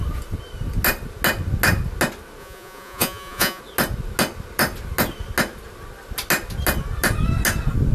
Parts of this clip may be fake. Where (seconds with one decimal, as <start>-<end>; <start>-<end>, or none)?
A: 2.4-3.6